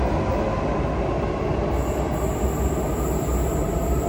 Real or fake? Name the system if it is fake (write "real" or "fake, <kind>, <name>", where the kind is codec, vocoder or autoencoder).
real